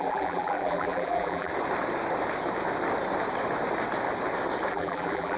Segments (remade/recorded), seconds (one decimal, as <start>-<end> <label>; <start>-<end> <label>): 0.0-1.5 remade; 1.5-4.7 recorded; 4.7-5.4 remade